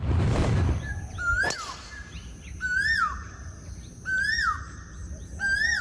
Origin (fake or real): real